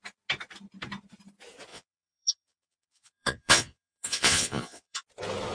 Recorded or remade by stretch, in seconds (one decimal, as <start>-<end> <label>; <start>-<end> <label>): 0.0-1.7 recorded; 1.7-5.0 remade; 5.0-5.5 recorded